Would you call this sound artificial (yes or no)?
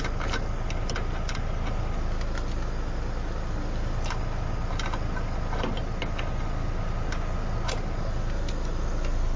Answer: no